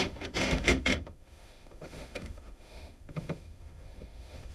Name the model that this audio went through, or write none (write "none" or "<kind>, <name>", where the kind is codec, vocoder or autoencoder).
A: autoencoder, DAC-VAE